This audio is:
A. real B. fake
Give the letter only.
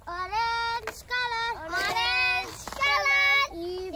A